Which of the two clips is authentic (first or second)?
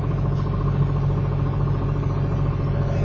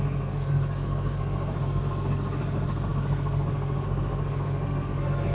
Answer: first